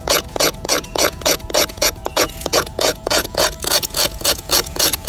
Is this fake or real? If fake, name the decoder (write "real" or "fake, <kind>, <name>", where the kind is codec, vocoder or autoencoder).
fake, vocoder, Vocos